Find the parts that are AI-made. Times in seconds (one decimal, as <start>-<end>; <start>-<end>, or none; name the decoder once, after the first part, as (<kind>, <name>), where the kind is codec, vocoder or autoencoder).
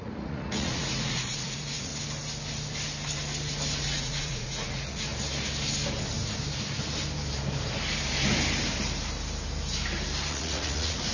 0.0-1.9 (vocoder, Vocos); 3.8-5.1; 10.3-11.1